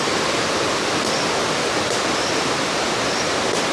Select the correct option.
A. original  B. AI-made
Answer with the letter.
A